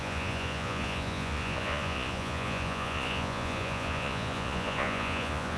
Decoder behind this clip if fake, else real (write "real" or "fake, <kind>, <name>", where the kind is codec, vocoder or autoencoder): fake, vocoder, Vocos